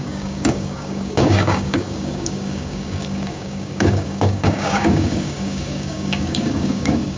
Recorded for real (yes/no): no